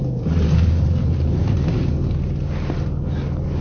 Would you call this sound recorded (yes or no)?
yes